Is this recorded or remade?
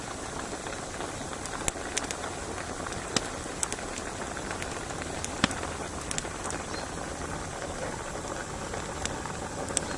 recorded